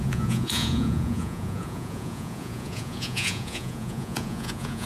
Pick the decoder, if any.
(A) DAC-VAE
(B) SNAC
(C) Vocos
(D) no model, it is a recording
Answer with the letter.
C